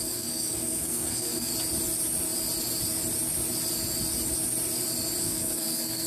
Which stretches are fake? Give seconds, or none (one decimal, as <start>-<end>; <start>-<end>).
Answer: 0.0-1.5; 5.2-6.1

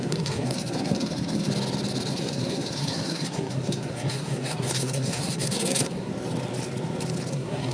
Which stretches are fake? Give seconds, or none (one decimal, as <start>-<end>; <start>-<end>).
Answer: 0.0-1.5; 2.1-6.1; 7.3-7.7

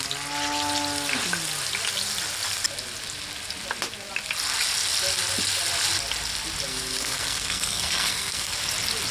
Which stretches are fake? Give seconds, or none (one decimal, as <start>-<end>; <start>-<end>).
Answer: 6.7-8.6

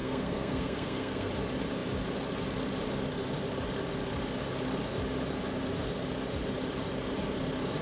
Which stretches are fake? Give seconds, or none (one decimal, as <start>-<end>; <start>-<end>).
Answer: 0.0-1.3